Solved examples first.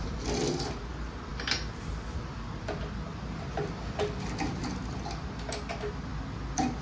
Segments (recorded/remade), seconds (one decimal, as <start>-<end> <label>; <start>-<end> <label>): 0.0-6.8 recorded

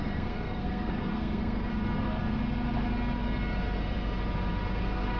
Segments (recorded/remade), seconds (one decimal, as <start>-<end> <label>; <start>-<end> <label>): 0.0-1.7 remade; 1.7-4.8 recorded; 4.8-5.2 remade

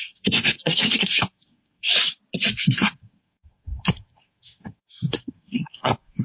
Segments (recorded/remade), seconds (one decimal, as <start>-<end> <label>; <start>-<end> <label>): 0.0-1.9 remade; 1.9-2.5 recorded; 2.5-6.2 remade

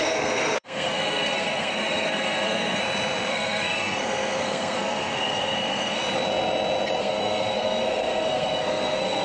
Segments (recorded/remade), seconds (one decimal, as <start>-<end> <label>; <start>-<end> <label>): 0.0-2.8 remade; 2.8-3.3 recorded; 3.3-6.0 remade; 6.0-7.0 recorded; 7.0-9.2 remade